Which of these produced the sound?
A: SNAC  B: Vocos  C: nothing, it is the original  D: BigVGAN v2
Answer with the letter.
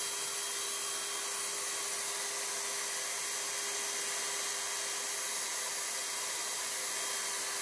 C